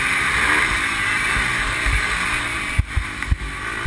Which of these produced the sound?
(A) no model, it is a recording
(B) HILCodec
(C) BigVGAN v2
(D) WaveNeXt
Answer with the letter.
A